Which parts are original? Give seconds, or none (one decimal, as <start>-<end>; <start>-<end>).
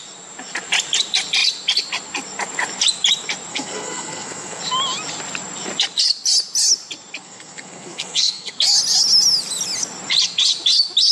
0.0-3.5; 4.6-7.2; 8.5-11.1